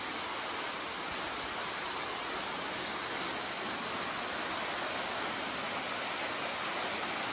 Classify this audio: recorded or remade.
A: recorded